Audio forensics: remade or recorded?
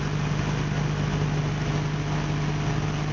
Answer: recorded